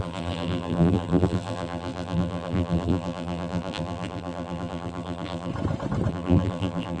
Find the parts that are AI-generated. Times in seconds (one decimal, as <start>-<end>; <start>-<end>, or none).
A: 0.0-5.5; 6.1-7.0